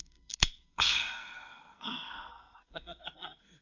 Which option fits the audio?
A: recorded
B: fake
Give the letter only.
B